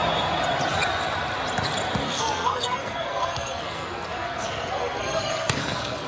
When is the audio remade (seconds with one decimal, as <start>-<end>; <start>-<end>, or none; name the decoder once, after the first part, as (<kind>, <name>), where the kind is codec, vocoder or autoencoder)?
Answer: 2.0-6.1 (codec, SNAC)